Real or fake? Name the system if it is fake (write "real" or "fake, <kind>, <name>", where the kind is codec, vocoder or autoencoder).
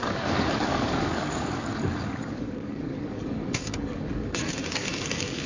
fake, codec, DAC